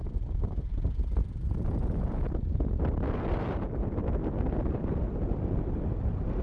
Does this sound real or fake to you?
real